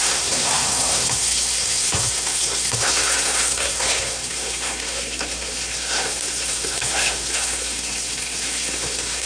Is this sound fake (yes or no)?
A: yes